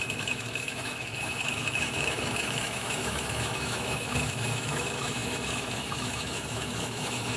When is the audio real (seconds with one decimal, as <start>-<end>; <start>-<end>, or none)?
none